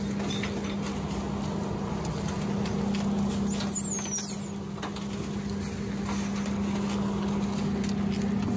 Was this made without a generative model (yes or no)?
yes